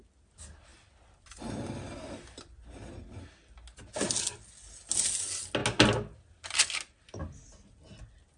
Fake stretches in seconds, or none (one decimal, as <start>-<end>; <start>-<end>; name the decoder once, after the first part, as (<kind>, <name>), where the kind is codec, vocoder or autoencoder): none